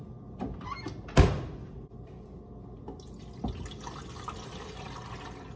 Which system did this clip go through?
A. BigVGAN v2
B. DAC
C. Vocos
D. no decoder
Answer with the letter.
D